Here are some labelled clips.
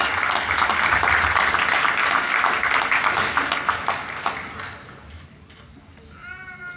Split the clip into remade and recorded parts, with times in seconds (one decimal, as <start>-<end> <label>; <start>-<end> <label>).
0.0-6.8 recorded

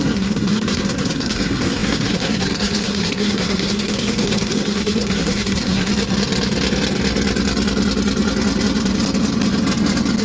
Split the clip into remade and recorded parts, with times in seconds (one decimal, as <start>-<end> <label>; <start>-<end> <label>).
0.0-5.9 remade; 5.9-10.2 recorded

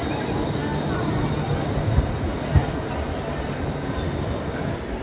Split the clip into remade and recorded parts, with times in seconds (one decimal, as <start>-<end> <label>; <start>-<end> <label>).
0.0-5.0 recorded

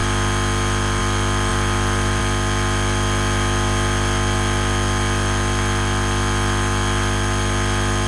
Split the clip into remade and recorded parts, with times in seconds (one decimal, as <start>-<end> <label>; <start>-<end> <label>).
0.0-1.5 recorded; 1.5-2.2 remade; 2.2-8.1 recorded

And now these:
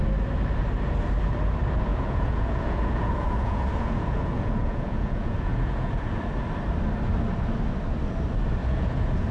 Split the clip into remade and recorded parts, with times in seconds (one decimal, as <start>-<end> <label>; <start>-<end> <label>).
0.0-1.9 recorded; 1.9-6.2 remade; 6.2-8.6 recorded; 8.6-9.3 remade

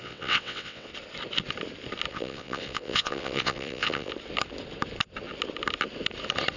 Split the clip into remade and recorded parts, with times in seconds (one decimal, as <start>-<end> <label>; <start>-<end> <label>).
0.0-0.9 remade; 0.9-2.1 recorded; 2.1-4.1 remade; 4.1-6.6 recorded

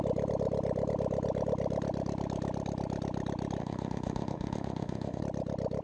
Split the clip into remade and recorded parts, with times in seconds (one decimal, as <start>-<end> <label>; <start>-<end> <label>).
0.0-3.6 recorded; 3.6-5.2 remade; 5.2-5.8 recorded